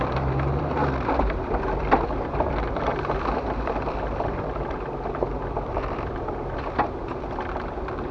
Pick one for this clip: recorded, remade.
remade